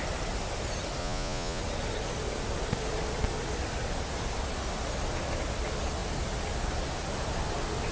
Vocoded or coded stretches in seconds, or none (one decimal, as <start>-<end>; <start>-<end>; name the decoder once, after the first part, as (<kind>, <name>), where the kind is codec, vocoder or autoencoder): 1.0-1.6 (vocoder, Vocos)